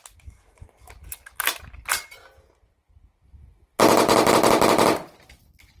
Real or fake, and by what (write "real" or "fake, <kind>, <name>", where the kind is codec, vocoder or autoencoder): real